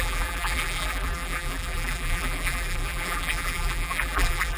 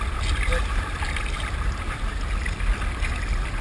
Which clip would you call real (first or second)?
second